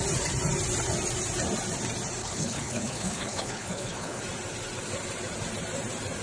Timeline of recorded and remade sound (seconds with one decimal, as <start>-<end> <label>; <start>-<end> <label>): 0.0-2.2 recorded; 2.2-4.2 remade; 4.2-6.2 recorded